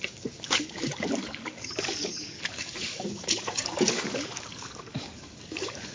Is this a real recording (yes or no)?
no